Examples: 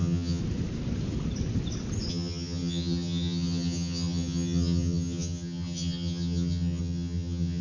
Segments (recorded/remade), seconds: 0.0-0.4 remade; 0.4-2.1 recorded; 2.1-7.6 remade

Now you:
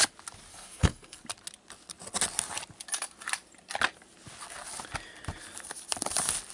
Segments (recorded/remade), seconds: 0.0-0.5 recorded; 0.5-1.2 remade; 1.2-6.5 recorded

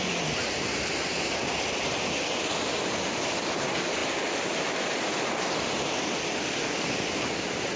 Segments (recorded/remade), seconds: 0.0-7.8 recorded

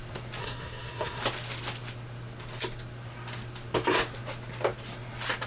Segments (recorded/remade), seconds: 0.0-0.4 recorded; 0.4-1.2 remade; 1.2-5.5 recorded

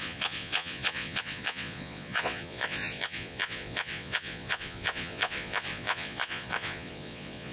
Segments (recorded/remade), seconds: 0.0-7.5 remade

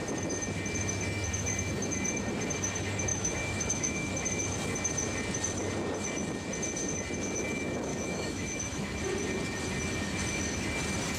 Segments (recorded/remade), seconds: 0.0-3.1 recorded; 3.1-4.1 remade; 4.1-7.9 recorded; 7.9-9.0 remade; 9.0-11.2 recorded

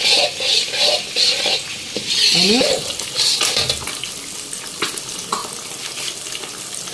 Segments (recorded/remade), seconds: 0.0-6.9 recorded

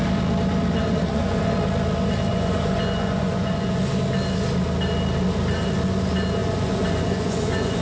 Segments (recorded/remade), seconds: 0.0-0.8 recorded; 0.8-1.5 remade; 1.5-2.3 recorded; 2.3-3.8 remade; 3.8-6.4 recorded; 6.4-7.8 remade